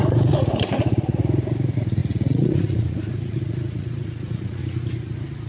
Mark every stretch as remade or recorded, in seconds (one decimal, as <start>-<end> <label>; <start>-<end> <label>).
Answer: 0.0-4.6 remade; 4.6-5.5 recorded